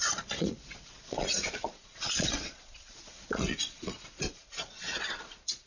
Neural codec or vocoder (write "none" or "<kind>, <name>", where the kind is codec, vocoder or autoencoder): vocoder, Vocos